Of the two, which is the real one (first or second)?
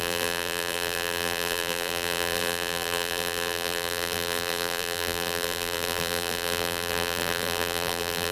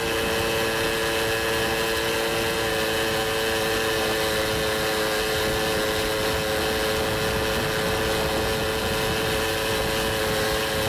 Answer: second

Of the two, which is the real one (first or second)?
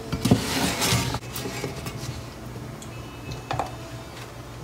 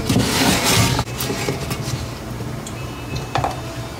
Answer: first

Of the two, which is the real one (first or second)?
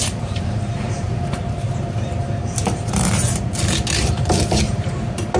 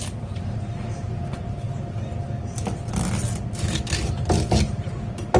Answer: second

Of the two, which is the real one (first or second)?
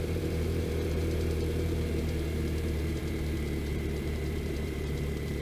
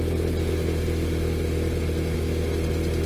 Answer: second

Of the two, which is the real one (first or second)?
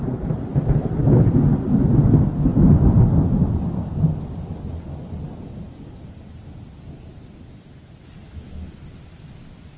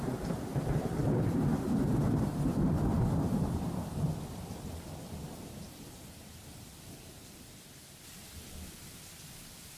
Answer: first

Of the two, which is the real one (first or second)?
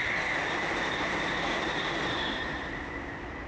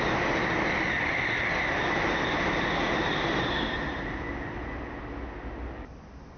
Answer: second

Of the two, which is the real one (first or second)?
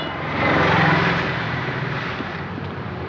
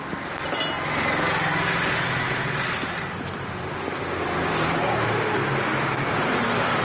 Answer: second